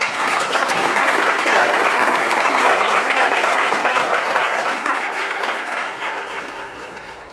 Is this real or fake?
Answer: fake